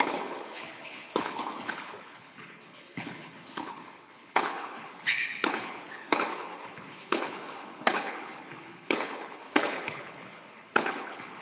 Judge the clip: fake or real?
fake